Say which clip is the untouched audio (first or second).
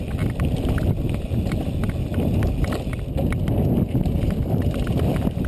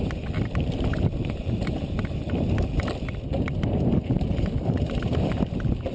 first